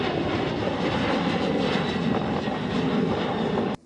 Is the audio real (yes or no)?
yes